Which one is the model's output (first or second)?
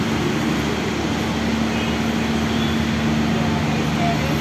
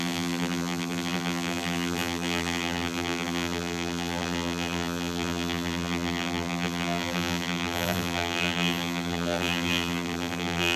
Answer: second